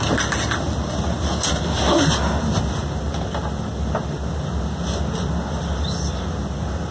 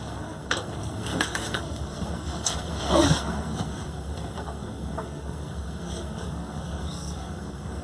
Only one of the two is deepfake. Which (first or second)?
second